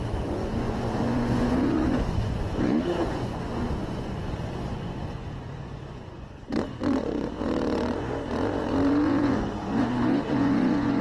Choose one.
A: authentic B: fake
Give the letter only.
B